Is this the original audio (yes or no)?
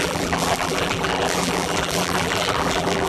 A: no